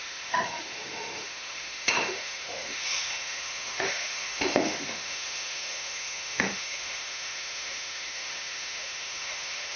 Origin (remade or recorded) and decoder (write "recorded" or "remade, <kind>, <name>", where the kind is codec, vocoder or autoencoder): remade, autoencoder, DAC-VAE